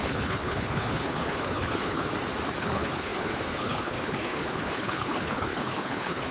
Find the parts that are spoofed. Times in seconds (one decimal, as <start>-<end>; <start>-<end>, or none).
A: 0.0-2.1; 2.6-6.3